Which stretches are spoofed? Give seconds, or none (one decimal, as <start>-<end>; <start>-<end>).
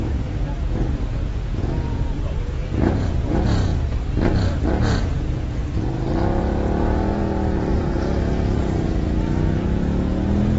0.0-3.7; 5.0-5.6; 6.4-7.2; 7.7-10.6